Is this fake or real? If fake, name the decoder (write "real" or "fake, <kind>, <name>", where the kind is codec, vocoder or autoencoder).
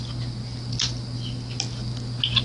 real